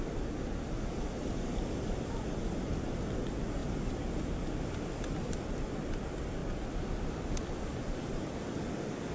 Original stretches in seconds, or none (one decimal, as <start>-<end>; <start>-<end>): 0.0-9.1